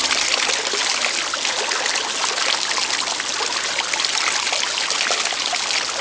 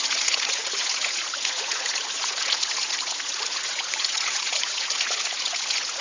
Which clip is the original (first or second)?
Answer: first